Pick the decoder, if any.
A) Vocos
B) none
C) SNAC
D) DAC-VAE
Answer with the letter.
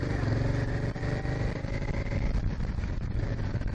B